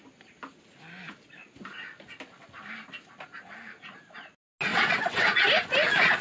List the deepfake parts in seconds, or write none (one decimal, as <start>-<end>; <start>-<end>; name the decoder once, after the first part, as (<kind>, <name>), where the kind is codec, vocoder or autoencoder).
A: 4.7-5.3 (vocoder, WaveNeXt)